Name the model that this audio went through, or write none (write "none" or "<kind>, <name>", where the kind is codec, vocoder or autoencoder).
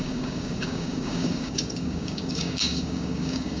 codec, DAC